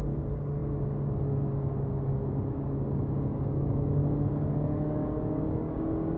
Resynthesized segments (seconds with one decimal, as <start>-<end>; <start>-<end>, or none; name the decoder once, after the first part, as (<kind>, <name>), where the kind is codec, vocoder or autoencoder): 0.0-6.2 (codec, DAC)